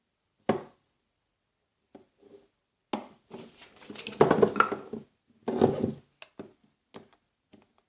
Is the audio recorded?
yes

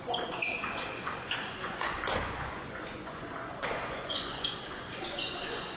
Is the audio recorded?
no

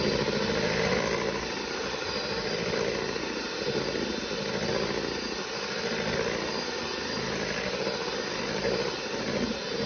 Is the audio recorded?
yes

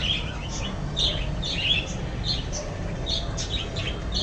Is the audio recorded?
yes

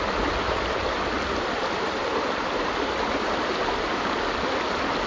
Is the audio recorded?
yes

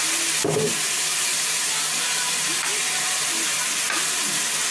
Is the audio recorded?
yes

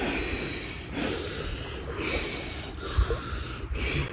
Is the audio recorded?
yes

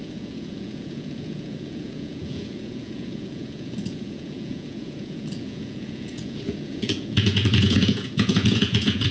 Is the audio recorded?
no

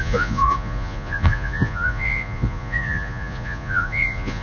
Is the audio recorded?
no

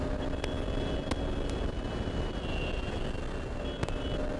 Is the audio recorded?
yes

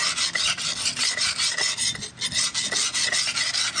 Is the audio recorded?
yes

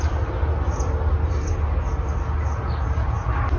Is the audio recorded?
yes